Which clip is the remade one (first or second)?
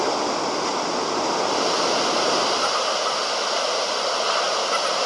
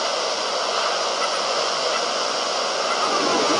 second